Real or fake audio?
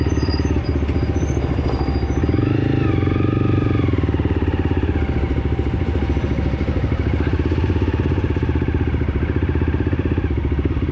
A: real